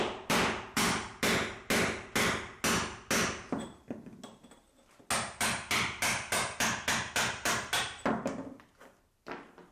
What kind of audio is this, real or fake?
real